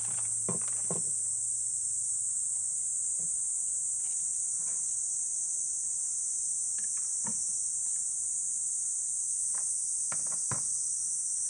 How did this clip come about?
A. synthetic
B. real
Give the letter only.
B